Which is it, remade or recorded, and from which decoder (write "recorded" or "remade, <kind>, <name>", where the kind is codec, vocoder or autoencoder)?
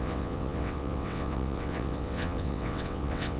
remade, vocoder, WaveNeXt